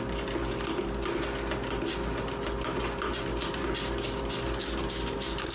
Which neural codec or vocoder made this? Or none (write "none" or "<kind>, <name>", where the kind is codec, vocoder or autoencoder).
none